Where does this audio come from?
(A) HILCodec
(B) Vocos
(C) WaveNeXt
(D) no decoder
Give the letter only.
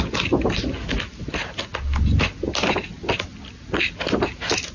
D